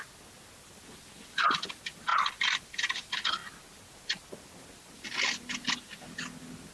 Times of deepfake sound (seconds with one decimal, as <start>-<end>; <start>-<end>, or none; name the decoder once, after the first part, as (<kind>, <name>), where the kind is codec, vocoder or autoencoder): none

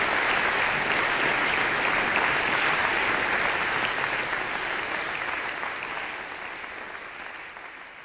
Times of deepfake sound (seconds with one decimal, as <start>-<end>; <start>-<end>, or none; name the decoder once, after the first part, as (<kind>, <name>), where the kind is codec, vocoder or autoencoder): none

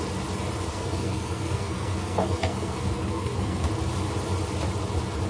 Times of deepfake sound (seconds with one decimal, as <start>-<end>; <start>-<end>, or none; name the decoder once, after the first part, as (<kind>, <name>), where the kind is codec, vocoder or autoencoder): 0.7-3.7 (codec, SNAC)

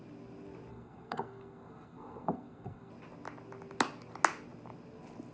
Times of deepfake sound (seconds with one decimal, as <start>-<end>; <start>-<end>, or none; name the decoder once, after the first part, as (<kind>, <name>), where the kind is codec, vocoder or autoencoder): 0.7-2.9 (codec, SNAC)

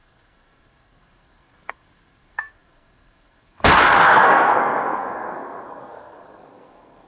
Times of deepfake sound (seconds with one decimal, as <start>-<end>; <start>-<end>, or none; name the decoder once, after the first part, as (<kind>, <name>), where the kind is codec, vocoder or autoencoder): 0.0-7.1 (codec, SNAC)

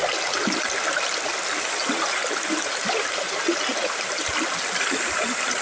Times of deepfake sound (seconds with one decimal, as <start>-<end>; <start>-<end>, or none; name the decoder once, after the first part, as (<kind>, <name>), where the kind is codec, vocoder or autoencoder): none

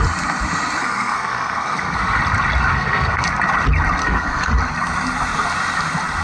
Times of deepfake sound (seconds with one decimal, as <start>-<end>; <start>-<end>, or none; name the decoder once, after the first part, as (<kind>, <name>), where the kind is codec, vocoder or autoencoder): 0.8-2.2 (codec, SNAC); 2.7-3.2; 4.0-4.5

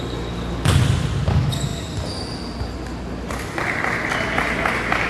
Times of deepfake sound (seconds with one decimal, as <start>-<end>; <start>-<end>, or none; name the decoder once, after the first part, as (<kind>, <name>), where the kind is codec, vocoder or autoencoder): none